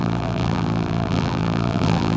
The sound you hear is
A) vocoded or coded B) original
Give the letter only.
A